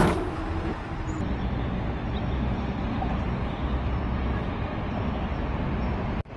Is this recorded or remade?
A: recorded